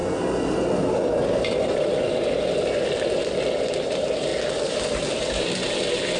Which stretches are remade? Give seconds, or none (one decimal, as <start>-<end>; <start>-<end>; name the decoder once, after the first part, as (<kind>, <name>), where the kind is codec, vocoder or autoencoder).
3.7-4.3 (vocoder, BigVGAN v2); 5.3-6.2